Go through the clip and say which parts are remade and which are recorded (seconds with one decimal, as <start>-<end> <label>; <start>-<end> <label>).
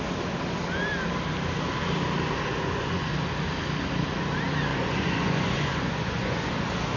0.0-2.5 recorded; 2.5-3.1 remade; 3.1-4.7 recorded; 4.7-6.5 remade; 6.5-7.0 recorded